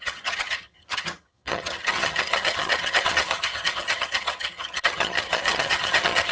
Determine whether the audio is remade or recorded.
remade